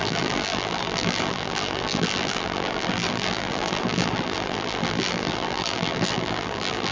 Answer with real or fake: fake